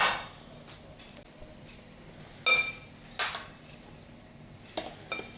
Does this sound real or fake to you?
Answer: real